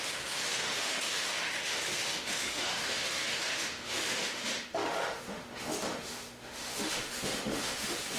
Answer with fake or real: fake